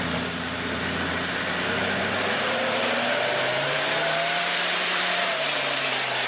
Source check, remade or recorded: remade